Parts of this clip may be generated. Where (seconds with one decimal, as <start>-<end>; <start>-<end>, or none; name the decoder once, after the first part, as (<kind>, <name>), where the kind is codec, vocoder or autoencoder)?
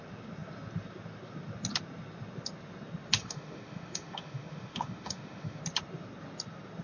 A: 3.2-5.6 (autoencoder, DAC-VAE)